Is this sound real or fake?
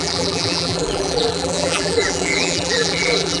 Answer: fake